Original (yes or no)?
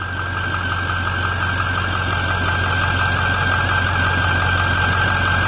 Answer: yes